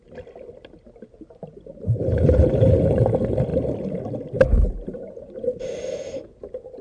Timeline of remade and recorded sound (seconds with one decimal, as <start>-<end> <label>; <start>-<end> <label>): 0.0-1.4 recorded; 1.4-2.9 remade; 2.9-4.5 recorded; 4.5-5.8 remade; 5.8-6.8 recorded